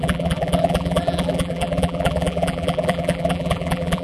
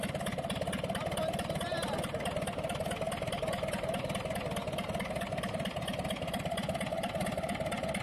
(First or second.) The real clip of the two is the second